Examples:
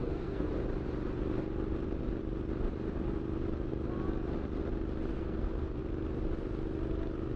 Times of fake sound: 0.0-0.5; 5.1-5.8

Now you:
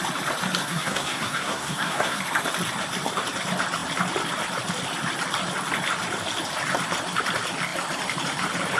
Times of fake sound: 0.6-2.2

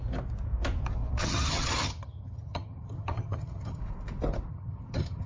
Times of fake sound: 1.2-3.8; 4.5-5.3

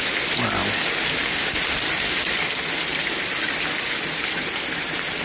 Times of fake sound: none

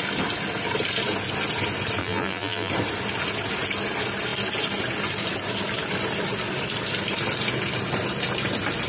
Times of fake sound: 2.0-2.7

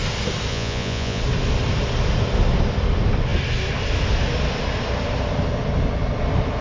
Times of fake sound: 0.5-1.2